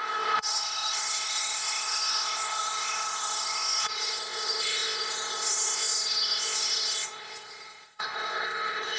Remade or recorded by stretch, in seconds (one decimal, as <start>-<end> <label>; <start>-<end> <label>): 0.0-9.0 remade